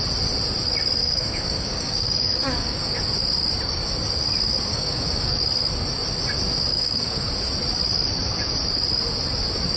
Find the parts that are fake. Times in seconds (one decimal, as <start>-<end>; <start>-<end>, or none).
1.0-3.0; 4.7-5.4; 6.7-7.3